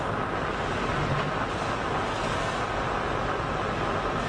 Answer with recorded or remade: recorded